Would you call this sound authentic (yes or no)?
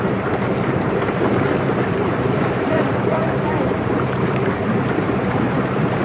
no